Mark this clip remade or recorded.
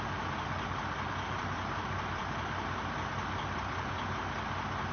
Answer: recorded